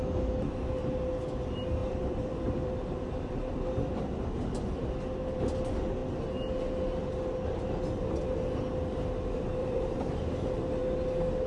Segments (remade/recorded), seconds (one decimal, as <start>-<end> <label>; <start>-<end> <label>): 0.0-1.8 recorded; 1.8-4.9 remade; 4.9-9.6 recorded; 9.6-10.1 remade; 10.1-11.5 recorded